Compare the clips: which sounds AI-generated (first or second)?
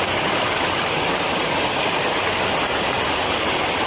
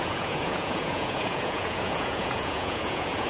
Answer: second